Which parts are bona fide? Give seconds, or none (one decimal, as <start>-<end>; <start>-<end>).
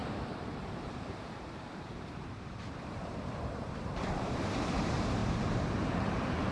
none